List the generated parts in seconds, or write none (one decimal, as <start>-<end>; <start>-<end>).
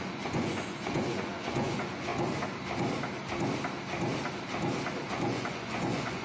0.0-2.1; 5.1-6.2